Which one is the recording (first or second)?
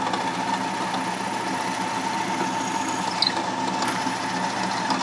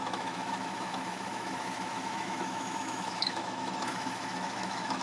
first